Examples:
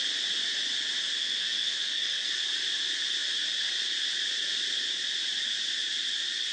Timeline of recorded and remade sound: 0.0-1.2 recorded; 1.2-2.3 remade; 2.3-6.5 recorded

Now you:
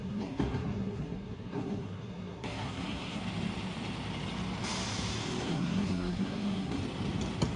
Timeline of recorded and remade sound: 0.0-3.2 remade; 3.2-5.4 recorded; 5.4-6.8 remade; 6.8-7.6 recorded

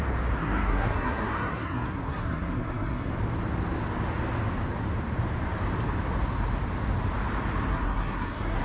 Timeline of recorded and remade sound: 0.0-0.4 recorded; 0.4-3.1 remade; 3.1-7.7 recorded; 7.7-8.6 remade

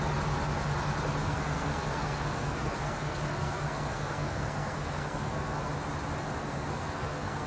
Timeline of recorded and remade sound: 0.0-1.2 recorded; 1.2-5.7 remade; 5.7-6.4 recorded; 6.4-7.5 remade